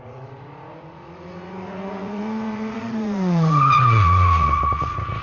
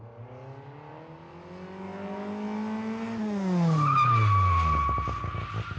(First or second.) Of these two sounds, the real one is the second